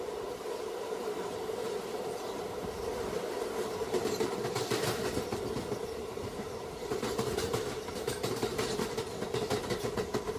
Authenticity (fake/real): fake